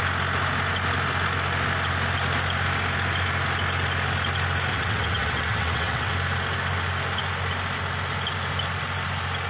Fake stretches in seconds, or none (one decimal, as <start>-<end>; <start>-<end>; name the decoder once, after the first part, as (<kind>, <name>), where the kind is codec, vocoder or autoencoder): 4.7-6.1 (vocoder, WaveNeXt)